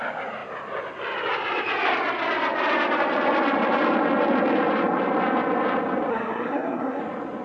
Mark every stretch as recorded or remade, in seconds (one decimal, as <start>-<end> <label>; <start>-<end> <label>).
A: 0.0-6.1 recorded; 6.1-7.0 remade; 7.0-7.4 recorded